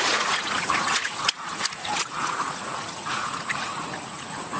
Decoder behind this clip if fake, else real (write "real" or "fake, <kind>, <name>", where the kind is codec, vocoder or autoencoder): fake, vocoder, Vocos